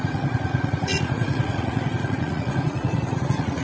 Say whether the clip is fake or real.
fake